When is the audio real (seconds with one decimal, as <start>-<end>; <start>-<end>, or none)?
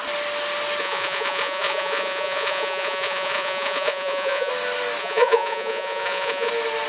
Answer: 0.0-0.8; 4.5-5.0; 6.5-6.9